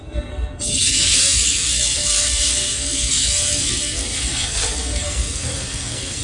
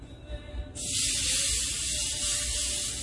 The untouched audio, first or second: second